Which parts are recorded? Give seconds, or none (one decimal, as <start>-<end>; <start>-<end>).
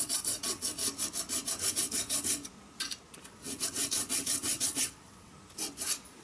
0.8-1.7; 2.4-3.2; 5.3-6.2